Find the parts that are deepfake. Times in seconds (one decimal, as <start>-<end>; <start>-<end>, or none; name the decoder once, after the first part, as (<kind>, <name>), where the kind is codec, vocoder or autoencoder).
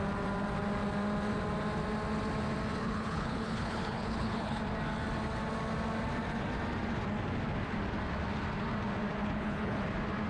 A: 2.8-4.6 (codec, HILCodec); 9.2-9.8